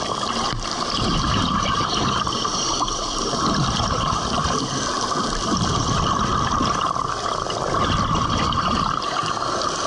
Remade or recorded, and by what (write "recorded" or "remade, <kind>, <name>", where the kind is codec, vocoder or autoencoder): remade, vocoder, BigVGAN v2